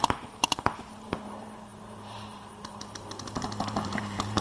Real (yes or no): no